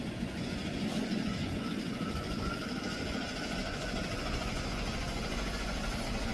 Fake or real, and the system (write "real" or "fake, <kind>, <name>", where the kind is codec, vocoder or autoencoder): fake, vocoder, Vocos